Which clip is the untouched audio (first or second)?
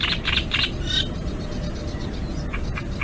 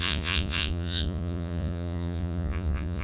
first